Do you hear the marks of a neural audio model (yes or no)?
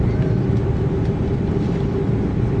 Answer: no